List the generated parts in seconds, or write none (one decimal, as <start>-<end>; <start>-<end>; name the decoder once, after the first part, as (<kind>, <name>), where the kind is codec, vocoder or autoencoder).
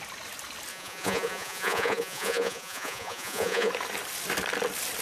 0.7-3.7 (vocoder, Vocos)